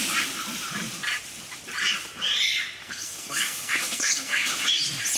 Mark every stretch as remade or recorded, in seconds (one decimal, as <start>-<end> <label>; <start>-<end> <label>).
0.0-2.8 recorded; 2.8-4.5 remade; 4.5-5.2 recorded